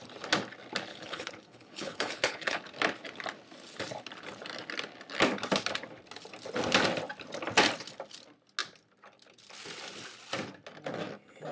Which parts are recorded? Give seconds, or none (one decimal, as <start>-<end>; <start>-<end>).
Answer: 0.0-0.9; 2.6-11.5